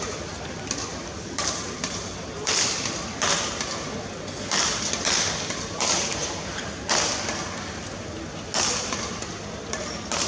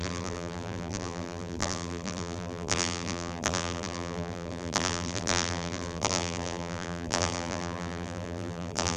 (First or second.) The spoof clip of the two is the second